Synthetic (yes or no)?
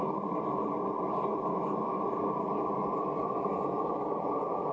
no